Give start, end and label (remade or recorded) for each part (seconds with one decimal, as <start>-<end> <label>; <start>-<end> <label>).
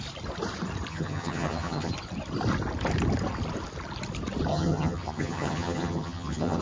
0.0-0.9 recorded; 0.9-1.9 remade; 1.9-4.5 recorded; 4.5-6.6 remade